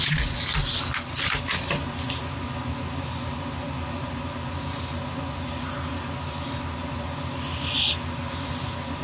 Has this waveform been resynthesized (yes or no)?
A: no